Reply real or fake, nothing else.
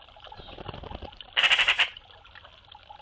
fake